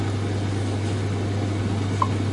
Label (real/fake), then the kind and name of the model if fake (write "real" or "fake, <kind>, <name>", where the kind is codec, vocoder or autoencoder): real